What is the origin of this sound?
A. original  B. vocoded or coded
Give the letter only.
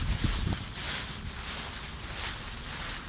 A